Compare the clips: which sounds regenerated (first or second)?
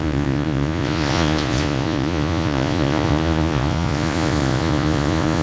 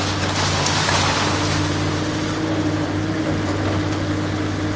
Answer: first